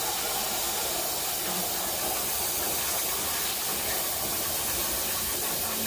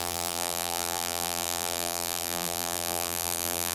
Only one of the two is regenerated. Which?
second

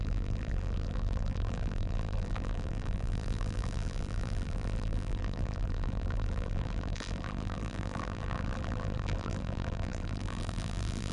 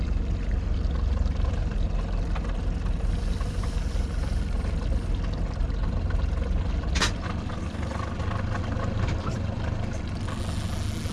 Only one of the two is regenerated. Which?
first